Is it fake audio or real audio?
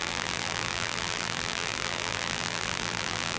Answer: fake